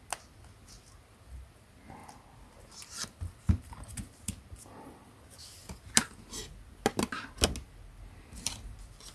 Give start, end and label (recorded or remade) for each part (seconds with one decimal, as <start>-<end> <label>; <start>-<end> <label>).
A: 0.0-9.1 recorded